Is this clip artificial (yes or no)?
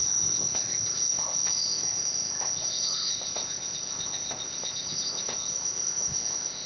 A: yes